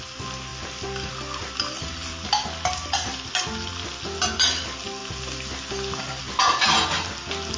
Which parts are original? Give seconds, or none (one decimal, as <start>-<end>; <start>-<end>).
0.0-7.6